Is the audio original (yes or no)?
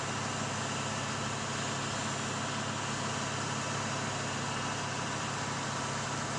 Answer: yes